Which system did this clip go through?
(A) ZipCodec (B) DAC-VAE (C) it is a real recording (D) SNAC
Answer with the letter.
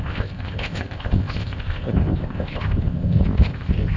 A